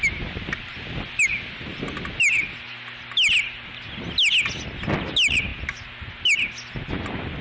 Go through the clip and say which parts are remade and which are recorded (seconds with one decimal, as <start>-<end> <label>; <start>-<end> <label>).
0.0-7.4 recorded

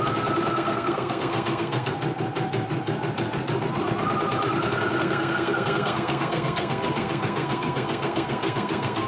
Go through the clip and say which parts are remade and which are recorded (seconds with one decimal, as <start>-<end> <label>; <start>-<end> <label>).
0.0-0.5 recorded; 0.5-1.9 remade; 1.9-5.0 recorded; 5.0-9.1 remade

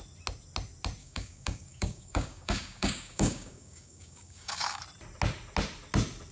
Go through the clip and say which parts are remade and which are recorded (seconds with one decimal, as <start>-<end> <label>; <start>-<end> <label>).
0.0-1.0 recorded; 1.0-4.8 remade; 4.8-6.3 recorded

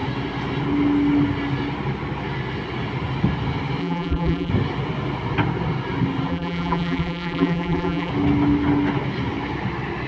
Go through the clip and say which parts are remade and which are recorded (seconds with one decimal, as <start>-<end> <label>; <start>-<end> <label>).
0.0-3.8 recorded; 3.8-4.5 remade; 4.5-6.3 recorded; 6.3-8.1 remade; 8.1-10.1 recorded

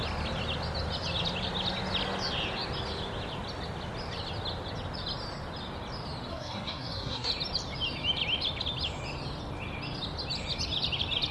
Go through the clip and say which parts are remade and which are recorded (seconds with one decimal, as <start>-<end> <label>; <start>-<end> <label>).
0.0-6.3 recorded; 6.3-7.3 remade; 7.3-11.3 recorded

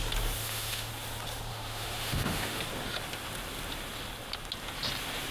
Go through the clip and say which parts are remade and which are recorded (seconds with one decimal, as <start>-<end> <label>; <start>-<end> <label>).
0.0-0.4 recorded; 0.4-0.9 remade; 0.9-1.5 recorded; 1.5-2.6 remade; 2.6-5.3 recorded

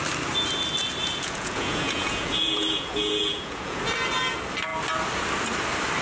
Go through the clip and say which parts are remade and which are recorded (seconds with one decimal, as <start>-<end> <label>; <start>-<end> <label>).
0.0-1.0 recorded; 1.0-3.8 remade; 3.8-6.0 recorded